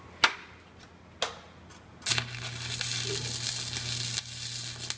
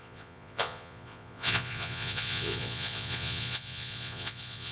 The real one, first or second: first